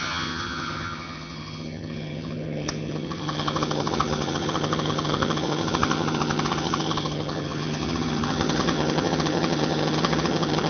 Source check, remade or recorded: remade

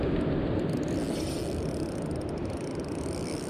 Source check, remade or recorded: recorded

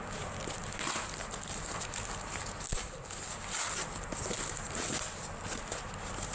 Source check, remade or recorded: recorded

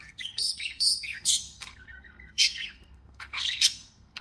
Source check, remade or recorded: remade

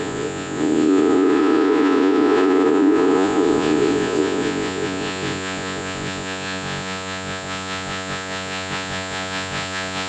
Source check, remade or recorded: remade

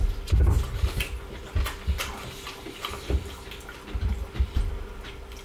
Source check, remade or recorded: recorded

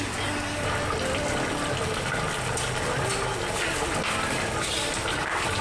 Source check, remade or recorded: recorded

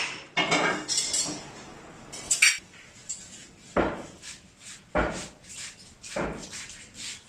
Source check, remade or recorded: recorded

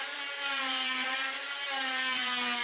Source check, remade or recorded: remade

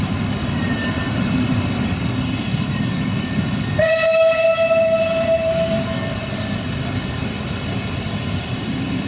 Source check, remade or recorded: recorded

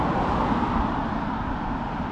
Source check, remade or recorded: recorded